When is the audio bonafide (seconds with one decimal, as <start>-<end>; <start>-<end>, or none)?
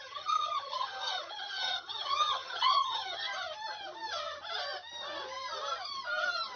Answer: 3.3-6.6